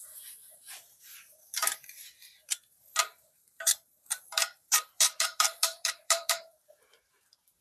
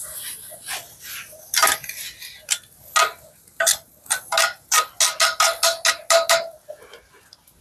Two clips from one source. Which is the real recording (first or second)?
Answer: second